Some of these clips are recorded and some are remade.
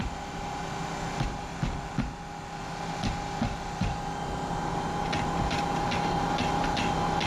recorded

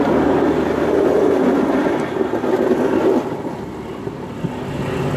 recorded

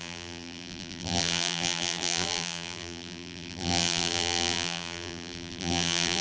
remade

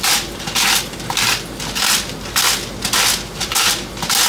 recorded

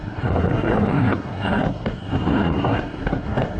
remade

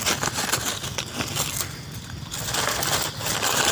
recorded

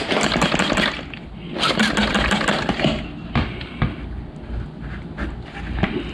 recorded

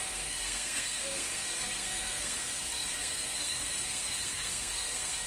remade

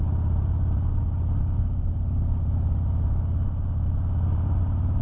recorded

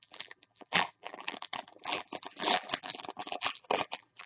remade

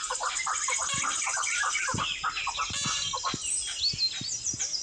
recorded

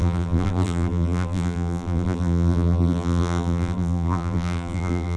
remade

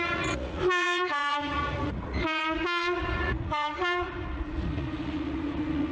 remade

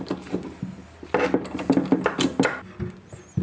recorded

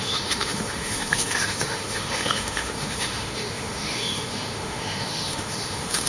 remade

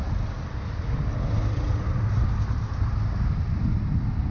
recorded